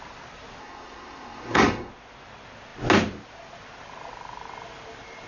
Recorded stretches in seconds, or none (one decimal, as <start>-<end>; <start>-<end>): 0.0-0.6; 1.9-5.3